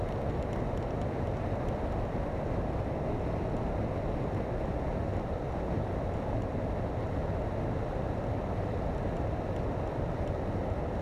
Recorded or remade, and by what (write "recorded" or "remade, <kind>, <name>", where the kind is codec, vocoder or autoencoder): recorded